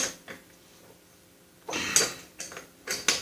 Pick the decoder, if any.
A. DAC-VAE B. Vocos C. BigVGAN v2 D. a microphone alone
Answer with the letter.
D